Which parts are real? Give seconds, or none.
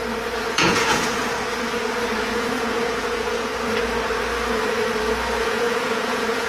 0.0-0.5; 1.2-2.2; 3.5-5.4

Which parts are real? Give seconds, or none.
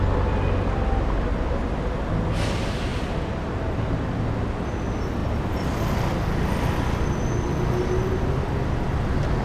0.0-9.4